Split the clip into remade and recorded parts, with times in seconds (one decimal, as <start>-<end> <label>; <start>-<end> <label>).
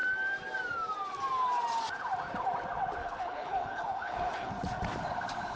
0.0-3.0 recorded; 3.0-4.5 remade; 4.5-5.6 recorded